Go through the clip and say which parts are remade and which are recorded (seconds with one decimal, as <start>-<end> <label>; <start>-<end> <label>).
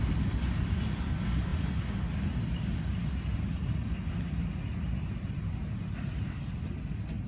0.0-7.3 recorded